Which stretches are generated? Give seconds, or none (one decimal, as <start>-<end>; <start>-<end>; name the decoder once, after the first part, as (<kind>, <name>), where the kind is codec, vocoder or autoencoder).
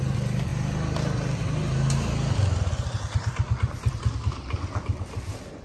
none